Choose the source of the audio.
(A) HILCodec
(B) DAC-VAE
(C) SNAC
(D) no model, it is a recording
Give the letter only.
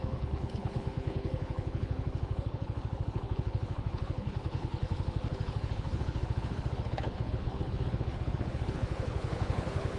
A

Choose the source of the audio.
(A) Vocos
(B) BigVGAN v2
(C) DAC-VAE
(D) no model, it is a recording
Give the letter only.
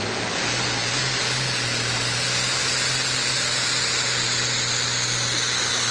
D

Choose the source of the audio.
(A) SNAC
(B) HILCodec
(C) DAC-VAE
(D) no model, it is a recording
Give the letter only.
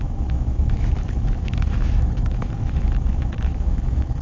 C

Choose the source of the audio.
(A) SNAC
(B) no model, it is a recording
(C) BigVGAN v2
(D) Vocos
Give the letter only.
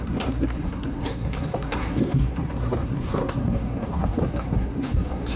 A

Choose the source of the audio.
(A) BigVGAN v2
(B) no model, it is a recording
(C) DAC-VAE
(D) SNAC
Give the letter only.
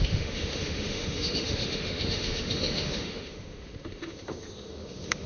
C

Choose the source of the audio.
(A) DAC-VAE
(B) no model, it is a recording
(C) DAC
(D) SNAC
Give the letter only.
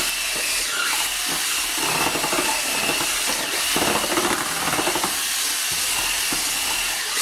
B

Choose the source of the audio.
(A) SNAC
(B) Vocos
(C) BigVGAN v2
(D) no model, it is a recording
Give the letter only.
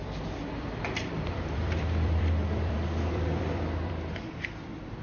C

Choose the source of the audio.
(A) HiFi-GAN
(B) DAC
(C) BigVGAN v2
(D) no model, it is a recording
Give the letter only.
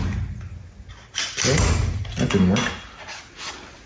D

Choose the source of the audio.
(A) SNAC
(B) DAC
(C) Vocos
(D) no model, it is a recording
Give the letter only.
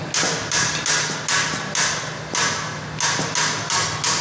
D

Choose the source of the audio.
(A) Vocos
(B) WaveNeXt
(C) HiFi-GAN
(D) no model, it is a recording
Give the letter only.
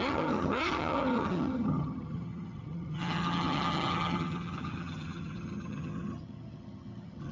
C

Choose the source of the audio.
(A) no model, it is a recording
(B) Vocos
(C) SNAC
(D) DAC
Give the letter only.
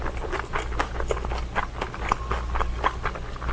A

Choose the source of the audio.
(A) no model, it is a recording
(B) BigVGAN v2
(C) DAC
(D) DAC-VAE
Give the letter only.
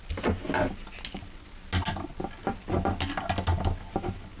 A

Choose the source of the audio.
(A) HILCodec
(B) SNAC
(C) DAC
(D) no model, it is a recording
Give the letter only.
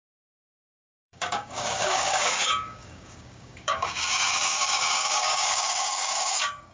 C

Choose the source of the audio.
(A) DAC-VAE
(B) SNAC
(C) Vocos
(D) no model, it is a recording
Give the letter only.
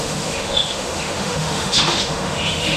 A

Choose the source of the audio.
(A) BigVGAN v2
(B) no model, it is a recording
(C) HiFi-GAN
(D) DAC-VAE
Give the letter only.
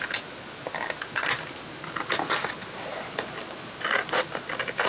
B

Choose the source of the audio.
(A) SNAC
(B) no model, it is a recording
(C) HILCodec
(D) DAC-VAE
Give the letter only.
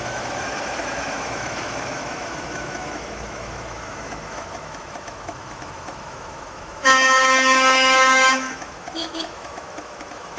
D